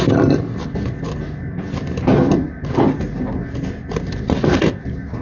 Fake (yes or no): no